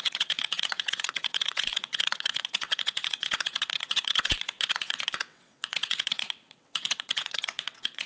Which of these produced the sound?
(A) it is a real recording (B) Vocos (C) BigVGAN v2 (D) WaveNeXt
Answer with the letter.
D